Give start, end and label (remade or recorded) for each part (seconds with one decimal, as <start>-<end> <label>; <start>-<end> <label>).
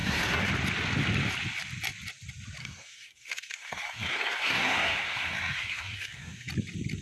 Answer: 0.0-0.5 remade; 0.5-2.6 recorded; 2.6-6.5 remade; 6.5-7.0 recorded